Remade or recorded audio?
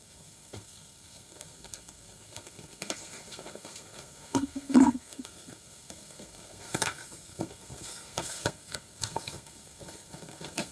remade